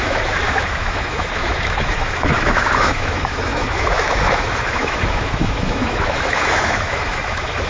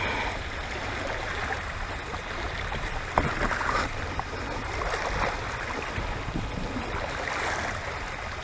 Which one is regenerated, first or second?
first